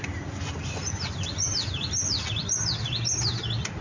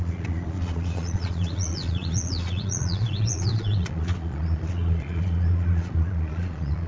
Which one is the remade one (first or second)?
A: second